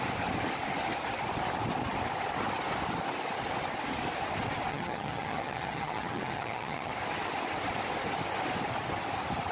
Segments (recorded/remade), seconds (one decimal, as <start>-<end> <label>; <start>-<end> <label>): 0.0-4.7 recorded; 4.7-6.9 remade; 6.9-9.5 recorded